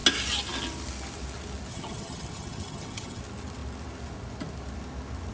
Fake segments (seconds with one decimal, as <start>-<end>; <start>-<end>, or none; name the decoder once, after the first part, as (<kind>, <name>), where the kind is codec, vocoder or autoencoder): 1.7-3.2 (vocoder, HiFi-GAN)